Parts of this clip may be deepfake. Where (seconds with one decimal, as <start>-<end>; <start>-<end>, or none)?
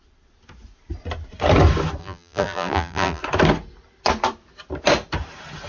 2.0-3.2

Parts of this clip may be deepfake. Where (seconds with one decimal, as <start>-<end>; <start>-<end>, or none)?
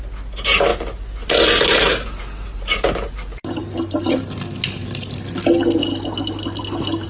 0.7-4.1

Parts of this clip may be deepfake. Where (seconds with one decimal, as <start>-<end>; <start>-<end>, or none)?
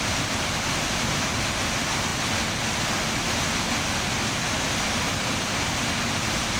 none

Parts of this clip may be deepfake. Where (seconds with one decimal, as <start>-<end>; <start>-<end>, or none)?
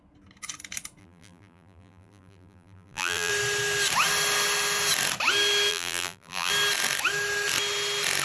1.0-3.3; 5.7-6.5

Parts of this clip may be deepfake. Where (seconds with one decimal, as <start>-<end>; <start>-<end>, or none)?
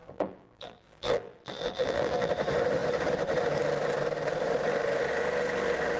0.0-2.3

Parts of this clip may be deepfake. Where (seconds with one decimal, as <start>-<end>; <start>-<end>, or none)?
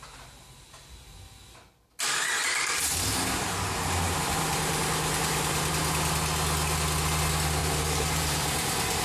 2.4-5.7; 7.6-9.0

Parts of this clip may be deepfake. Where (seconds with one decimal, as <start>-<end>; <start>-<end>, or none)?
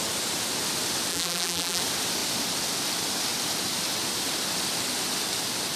1.1-1.8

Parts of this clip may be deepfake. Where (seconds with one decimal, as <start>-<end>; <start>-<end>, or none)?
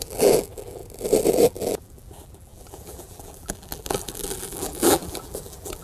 0.0-0.8; 1.3-5.8